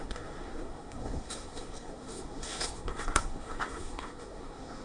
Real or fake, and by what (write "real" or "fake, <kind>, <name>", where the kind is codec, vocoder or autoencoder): fake, codec, SNAC